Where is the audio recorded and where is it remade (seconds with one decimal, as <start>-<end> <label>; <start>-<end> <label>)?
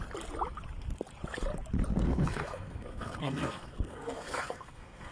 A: 0.0-1.9 recorded; 1.9-5.1 remade